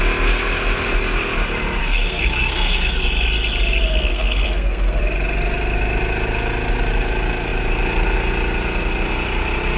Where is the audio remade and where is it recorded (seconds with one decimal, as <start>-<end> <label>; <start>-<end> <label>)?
0.0-1.8 recorded; 1.8-3.1 remade; 3.1-4.1 recorded; 4.1-5.0 remade; 5.0-9.8 recorded